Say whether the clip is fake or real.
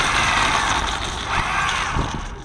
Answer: real